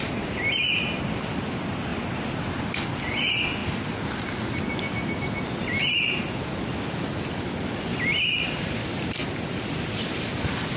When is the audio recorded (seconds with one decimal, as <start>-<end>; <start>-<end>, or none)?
0.0-10.8